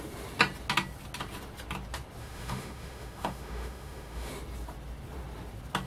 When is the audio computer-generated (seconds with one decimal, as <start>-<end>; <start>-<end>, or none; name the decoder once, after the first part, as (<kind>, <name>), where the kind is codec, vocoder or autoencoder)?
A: 2.2-4.3 (autoencoder, DAC-VAE)